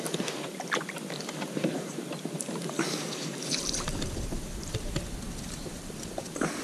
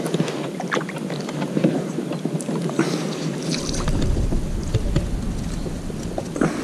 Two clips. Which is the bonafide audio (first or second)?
second